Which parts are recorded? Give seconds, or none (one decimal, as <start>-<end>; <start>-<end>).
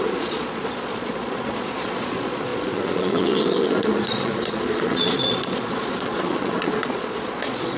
none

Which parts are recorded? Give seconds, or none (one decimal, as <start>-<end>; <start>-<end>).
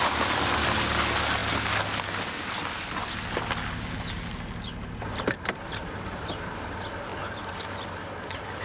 0.0-8.6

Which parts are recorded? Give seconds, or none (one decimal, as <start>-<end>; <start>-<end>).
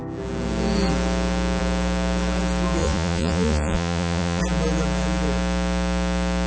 0.0-2.8; 4.4-6.5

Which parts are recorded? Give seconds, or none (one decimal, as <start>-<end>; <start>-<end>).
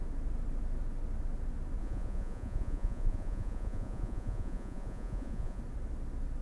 0.0-1.8; 5.6-6.4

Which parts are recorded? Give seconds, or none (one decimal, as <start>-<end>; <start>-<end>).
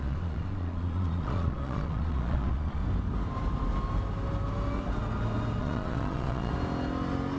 2.8-5.6; 6.5-7.4